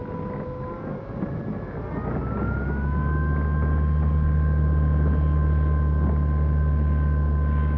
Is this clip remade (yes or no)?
no